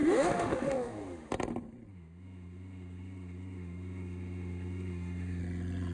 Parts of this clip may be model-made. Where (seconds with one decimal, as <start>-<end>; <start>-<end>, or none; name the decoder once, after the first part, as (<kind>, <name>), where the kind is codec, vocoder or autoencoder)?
0.0-1.3 (autoencoder, DAC-VAE); 1.9-5.4